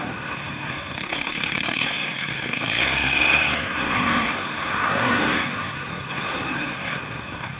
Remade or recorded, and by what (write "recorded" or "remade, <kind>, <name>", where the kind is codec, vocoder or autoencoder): remade, codec, SNAC